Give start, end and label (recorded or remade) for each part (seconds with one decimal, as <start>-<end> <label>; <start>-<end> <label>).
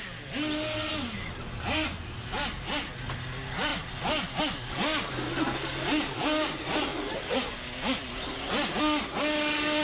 0.0-9.8 recorded